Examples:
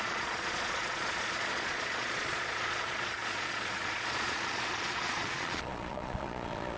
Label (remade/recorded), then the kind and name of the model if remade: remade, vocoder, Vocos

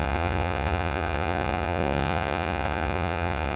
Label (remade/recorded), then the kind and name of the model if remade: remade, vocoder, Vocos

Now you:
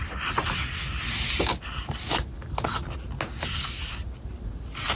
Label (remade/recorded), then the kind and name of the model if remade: recorded